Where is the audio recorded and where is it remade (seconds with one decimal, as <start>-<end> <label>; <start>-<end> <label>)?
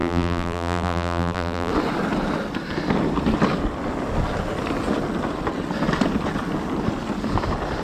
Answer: 0.0-1.7 remade; 1.7-7.8 recorded